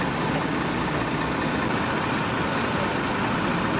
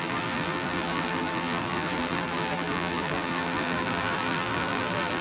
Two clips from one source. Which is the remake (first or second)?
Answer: second